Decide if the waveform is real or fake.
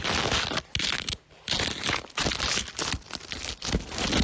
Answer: real